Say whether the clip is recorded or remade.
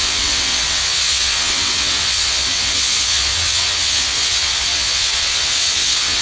remade